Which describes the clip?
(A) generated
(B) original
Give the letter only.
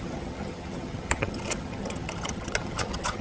A